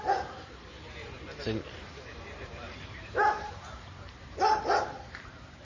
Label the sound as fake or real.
fake